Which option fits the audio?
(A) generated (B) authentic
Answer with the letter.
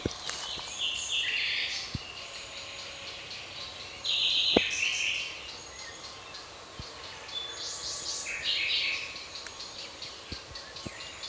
B